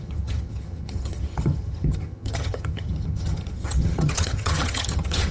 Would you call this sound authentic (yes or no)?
no